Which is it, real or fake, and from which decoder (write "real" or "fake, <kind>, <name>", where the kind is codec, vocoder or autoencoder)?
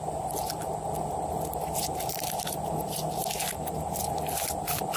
real